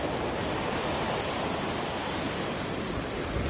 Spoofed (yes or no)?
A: no